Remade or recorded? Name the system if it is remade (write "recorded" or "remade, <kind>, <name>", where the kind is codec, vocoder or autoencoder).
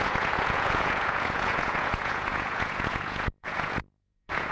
remade, vocoder, Vocos